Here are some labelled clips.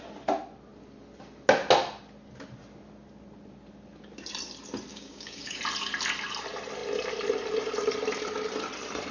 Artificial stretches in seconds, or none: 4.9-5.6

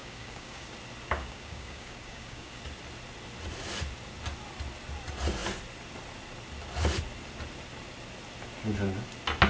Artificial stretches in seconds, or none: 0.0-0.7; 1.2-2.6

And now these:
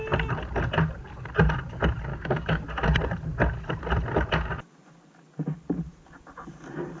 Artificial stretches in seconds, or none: 2.1-2.6

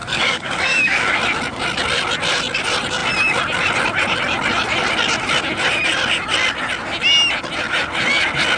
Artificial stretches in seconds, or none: 0.0-1.2